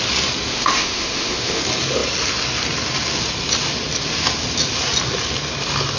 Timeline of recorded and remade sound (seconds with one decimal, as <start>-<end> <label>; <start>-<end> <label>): 0.0-0.5 recorded; 0.5-1.6 remade; 1.6-6.0 recorded